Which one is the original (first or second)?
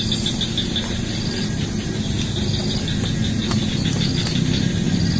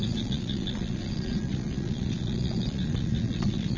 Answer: first